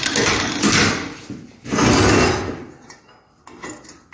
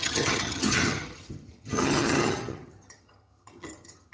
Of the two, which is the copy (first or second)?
second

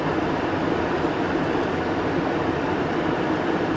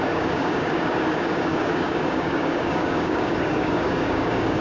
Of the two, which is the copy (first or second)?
second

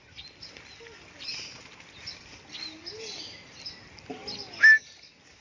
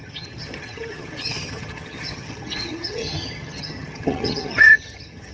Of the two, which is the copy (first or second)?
second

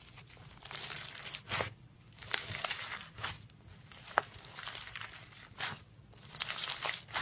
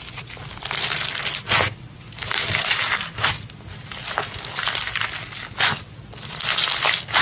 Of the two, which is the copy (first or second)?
first